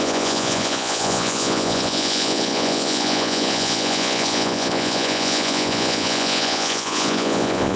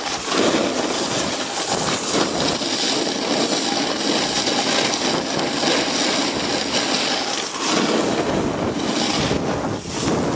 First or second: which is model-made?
first